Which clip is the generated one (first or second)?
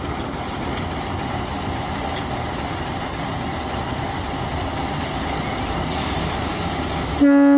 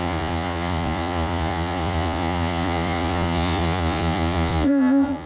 second